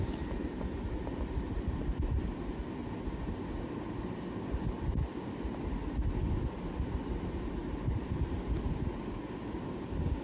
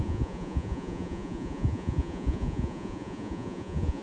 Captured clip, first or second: first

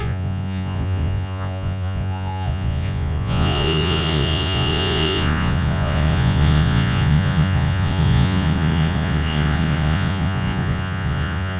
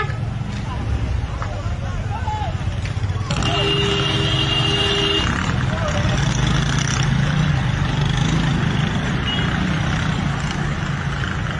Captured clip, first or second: second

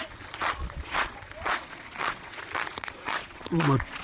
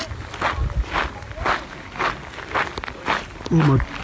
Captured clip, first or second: second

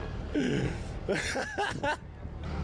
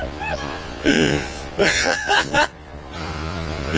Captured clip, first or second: first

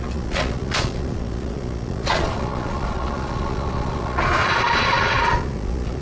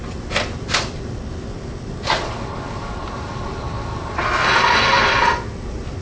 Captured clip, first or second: second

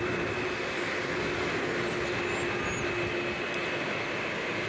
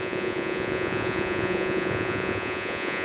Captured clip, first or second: first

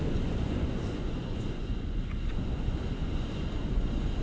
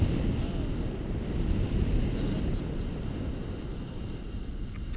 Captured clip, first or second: second